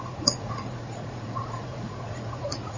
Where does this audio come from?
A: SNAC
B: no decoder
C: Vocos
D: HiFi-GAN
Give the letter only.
C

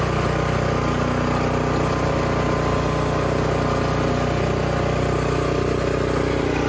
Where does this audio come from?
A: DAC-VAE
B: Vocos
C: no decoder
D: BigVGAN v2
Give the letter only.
C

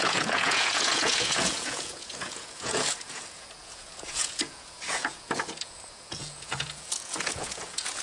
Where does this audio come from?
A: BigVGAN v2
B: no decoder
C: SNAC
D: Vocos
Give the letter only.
D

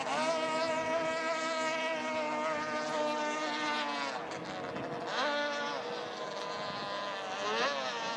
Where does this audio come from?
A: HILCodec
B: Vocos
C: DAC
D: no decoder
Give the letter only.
D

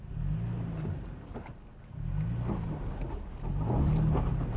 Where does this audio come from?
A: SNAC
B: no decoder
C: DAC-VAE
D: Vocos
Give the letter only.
B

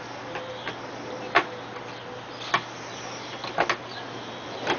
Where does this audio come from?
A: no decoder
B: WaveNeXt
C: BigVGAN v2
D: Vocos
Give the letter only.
A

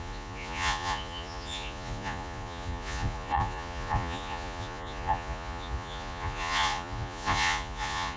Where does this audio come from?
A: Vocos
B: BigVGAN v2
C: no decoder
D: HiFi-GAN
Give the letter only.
A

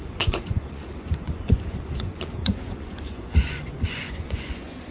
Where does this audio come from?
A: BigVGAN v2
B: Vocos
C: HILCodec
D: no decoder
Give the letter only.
B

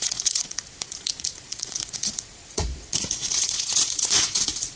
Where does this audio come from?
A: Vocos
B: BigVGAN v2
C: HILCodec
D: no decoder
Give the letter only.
A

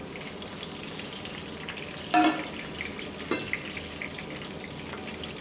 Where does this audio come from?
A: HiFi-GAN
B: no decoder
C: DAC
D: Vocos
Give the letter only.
B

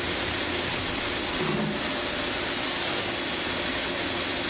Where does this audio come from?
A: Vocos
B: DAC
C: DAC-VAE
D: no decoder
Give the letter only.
D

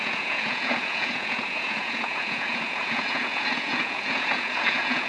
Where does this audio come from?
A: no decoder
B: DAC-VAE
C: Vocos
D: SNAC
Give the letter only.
C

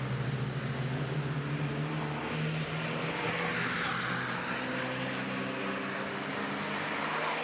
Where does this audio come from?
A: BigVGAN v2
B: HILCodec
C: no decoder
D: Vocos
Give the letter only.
C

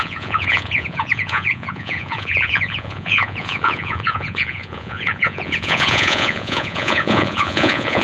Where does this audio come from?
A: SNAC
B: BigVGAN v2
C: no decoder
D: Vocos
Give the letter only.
D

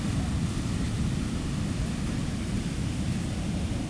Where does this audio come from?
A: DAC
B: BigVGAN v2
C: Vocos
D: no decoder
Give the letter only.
D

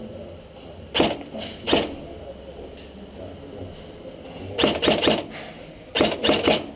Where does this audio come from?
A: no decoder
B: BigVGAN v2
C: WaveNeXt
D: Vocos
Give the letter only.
A